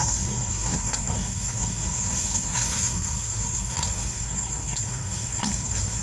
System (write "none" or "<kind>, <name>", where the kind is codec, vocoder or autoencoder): codec, SNAC